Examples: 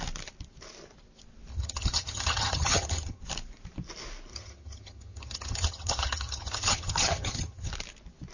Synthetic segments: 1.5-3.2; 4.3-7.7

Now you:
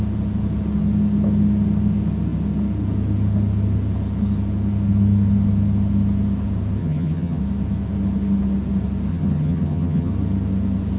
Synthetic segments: 6.8-7.4; 9.1-10.1

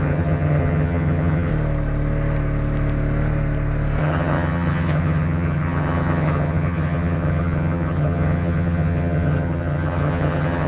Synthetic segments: 0.0-1.5; 4.0-10.7

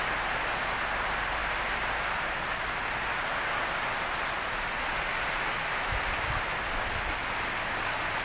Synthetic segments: none

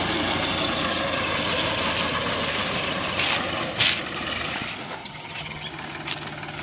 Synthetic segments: 5.0-5.7

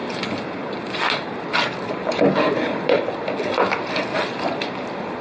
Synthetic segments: none